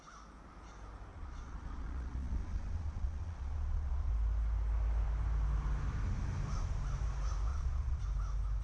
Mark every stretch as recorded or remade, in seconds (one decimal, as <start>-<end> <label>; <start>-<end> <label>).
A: 0.0-1.1 recorded; 1.1-4.1 remade; 4.1-7.5 recorded; 7.5-8.0 remade; 8.0-8.6 recorded